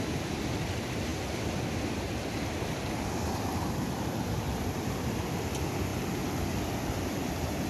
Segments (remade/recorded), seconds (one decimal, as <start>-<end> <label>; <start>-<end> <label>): 0.0-7.7 recorded